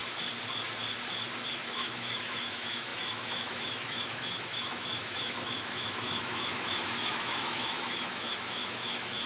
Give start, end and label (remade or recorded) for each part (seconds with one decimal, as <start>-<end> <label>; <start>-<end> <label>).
0.0-1.5 recorded; 1.5-9.3 remade